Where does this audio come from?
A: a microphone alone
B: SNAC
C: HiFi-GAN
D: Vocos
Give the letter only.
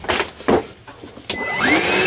A